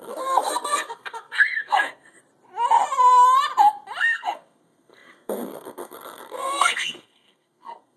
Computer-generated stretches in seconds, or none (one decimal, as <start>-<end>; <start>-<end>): 0.0-2.2; 4.0-8.0